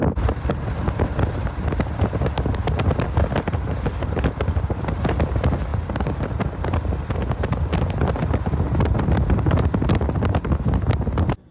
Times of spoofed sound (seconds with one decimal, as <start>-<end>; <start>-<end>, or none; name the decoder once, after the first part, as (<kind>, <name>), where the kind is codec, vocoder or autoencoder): none